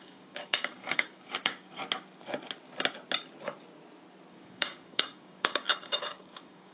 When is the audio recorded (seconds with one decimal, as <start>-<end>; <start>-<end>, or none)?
1.8-4.3

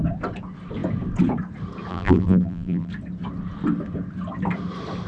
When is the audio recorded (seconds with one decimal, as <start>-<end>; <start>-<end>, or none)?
0.0-1.9; 2.9-5.1

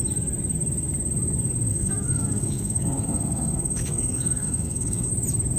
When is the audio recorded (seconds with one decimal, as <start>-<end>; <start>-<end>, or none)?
0.0-1.7; 5.1-5.6